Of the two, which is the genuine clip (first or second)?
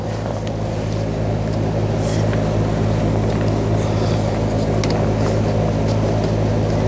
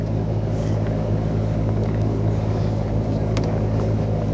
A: first